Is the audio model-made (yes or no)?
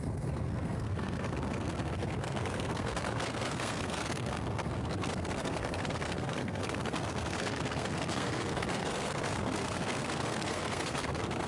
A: yes